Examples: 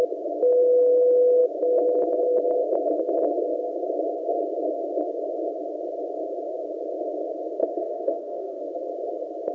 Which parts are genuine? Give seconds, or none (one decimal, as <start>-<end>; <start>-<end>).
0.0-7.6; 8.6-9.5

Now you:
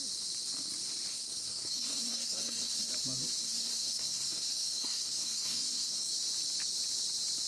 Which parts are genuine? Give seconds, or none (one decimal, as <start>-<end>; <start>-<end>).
0.0-1.1; 2.9-3.4; 6.1-7.5

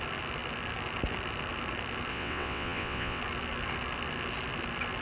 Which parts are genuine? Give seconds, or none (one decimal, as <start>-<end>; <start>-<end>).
0.0-2.1; 3.2-5.0

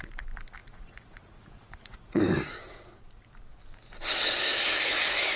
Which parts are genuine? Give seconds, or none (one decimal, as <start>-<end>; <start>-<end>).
0.0-0.6; 2.2-5.4

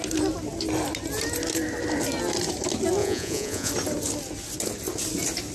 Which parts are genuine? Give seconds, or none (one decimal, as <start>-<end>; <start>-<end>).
0.0-3.0; 3.7-5.5

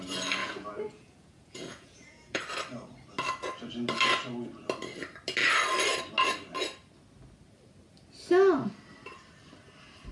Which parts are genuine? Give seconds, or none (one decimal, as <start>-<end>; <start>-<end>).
0.0-0.4; 2.4-10.1